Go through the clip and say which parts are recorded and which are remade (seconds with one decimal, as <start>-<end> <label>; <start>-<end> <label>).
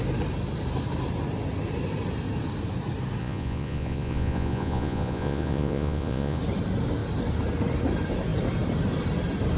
0.0-3.2 recorded; 3.2-6.4 remade; 6.4-9.6 recorded